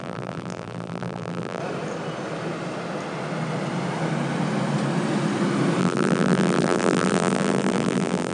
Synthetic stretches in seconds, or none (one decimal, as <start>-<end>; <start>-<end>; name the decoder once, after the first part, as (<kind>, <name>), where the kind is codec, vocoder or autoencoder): 0.0-1.6 (vocoder, BigVGAN v2); 5.8-8.3